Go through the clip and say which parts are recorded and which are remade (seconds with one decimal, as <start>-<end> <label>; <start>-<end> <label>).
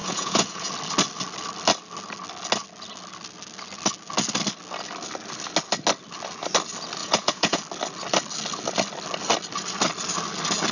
0.0-0.7 remade; 0.7-7.0 recorded; 7.0-7.6 remade; 7.6-10.7 recorded